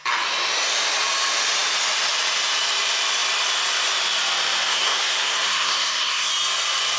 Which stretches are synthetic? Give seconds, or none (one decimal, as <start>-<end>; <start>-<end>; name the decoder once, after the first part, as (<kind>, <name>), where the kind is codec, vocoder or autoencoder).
4.7-6.3 (codec, SNAC)